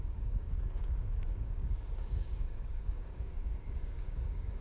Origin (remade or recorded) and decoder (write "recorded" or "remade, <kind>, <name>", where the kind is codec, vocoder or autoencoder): remade, codec, DAC